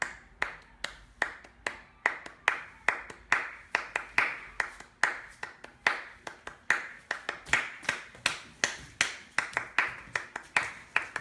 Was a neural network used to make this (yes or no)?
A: no